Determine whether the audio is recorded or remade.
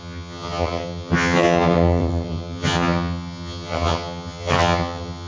remade